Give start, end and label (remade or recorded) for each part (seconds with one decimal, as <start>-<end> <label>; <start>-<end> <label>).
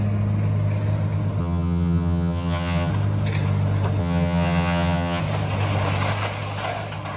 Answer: 0.0-1.4 recorded; 1.4-2.9 remade; 2.9-4.0 recorded; 4.0-5.2 remade; 5.2-7.2 recorded